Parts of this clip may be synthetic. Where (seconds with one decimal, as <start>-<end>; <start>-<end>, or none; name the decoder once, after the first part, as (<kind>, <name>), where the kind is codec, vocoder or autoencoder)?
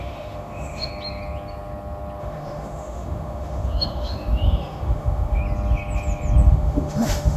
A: 0.0-0.9 (autoencoder, DAC-VAE); 2.2-5.4; 6.5-7.4